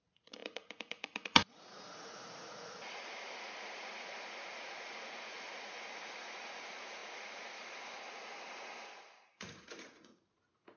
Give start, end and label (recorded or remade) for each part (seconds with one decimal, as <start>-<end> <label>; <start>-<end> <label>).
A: 0.0-10.8 remade